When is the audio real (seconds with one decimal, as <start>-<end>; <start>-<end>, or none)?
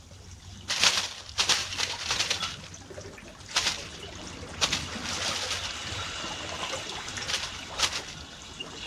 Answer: 0.0-1.6; 2.2-3.3; 4.0-8.9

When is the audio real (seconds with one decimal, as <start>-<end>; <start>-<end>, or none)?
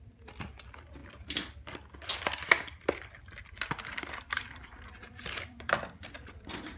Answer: 1.0-4.0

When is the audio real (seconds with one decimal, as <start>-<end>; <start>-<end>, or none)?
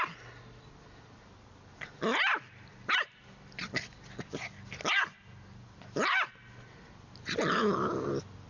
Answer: 0.0-8.5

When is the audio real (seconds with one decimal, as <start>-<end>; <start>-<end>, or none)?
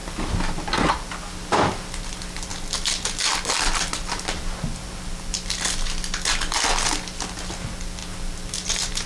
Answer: 0.0-9.1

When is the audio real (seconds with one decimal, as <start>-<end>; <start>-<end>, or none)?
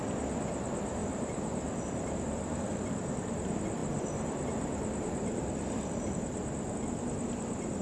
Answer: none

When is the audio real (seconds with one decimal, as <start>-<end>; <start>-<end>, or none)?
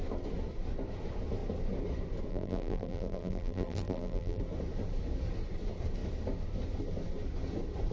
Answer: 0.0-2.3; 4.4-7.9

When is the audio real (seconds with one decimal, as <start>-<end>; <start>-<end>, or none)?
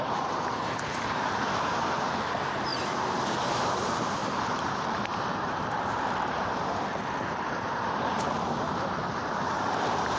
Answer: 2.7-3.5